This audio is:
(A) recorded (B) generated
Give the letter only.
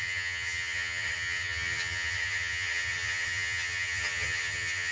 B